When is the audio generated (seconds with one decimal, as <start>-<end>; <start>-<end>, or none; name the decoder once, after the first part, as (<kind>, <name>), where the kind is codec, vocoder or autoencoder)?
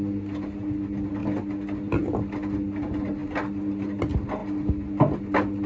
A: none